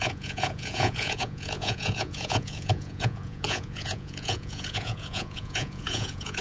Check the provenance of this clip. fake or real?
fake